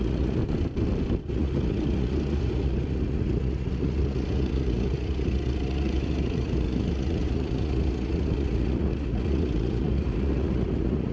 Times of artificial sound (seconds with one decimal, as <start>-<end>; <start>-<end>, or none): 0.0-0.4; 1.3-11.1